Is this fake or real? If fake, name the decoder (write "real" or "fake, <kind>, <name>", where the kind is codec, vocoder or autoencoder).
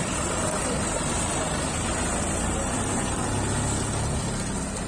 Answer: real